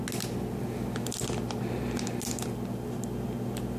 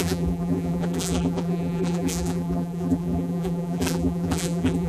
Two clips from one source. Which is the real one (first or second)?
first